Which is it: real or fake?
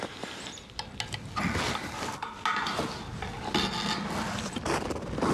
real